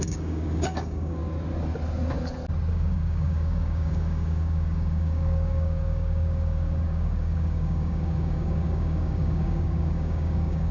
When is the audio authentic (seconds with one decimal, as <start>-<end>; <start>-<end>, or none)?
1.2-2.7